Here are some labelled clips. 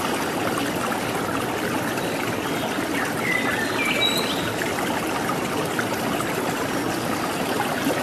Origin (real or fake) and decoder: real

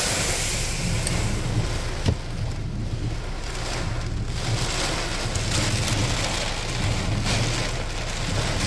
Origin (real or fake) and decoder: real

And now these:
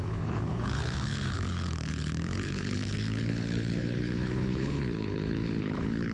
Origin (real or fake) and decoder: fake, codec, HILCodec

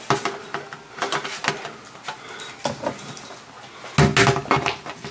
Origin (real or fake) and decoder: real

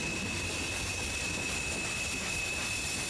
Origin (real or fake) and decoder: real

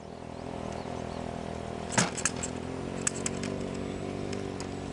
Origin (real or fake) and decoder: real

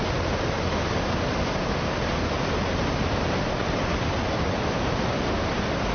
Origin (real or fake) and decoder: real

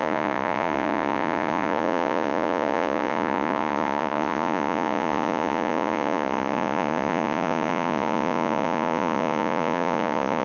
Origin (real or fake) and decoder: fake, vocoder, Vocos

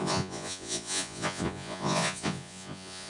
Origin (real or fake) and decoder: fake, vocoder, Vocos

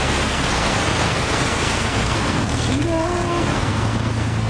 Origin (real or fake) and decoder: fake, codec, SNAC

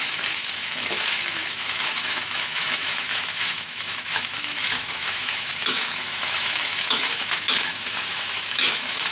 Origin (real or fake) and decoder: fake, autoencoder, DAC-VAE